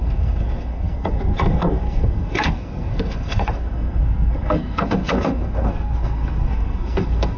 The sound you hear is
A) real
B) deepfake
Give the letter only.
B